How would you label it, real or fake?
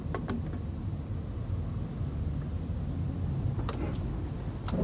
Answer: real